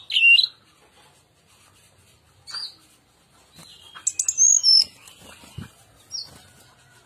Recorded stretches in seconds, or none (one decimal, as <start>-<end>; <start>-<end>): 0.0-7.1